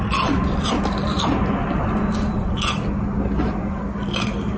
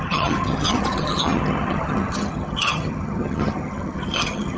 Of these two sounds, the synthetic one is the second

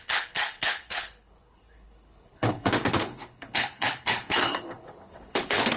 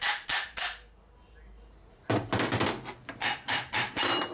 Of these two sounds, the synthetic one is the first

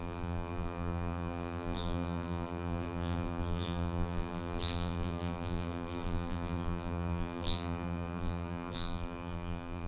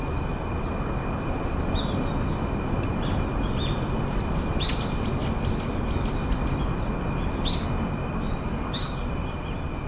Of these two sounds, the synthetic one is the first